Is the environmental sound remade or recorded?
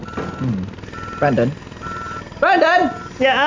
recorded